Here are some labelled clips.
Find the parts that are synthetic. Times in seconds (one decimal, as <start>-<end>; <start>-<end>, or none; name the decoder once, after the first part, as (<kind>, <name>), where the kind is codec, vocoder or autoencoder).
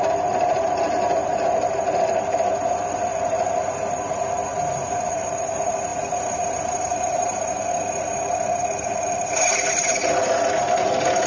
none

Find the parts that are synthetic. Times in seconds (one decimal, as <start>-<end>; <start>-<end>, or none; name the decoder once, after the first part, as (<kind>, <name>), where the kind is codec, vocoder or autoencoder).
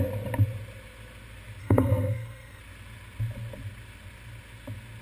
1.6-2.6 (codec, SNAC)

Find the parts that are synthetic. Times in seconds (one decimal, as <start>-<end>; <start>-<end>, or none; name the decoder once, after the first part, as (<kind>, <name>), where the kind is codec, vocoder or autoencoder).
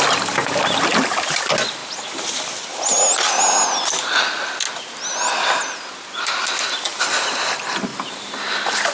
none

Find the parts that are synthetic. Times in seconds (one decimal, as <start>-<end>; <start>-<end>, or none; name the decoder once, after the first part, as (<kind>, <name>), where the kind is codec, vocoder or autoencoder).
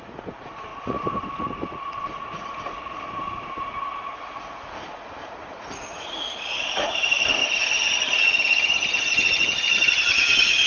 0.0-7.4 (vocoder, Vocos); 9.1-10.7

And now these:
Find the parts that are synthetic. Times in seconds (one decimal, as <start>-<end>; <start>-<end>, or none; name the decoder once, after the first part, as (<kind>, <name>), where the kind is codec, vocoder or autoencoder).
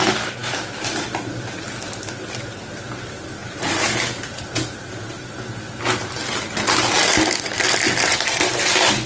3.4-4.4 (vocoder, BigVGAN v2)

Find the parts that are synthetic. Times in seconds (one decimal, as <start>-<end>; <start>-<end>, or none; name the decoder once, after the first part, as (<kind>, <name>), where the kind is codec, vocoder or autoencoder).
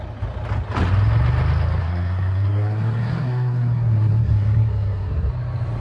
1.8-5.3 (codec, SNAC)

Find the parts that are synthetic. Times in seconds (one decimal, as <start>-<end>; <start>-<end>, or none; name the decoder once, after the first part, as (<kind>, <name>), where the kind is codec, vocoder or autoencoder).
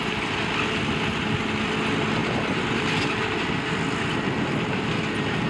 2.2-5.5 (vocoder, BigVGAN v2)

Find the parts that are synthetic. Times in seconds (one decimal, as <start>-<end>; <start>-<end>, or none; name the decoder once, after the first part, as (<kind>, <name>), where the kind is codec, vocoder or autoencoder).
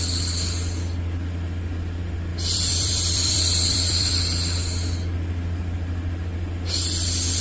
2.3-4.2 (vocoder, BigVGAN v2)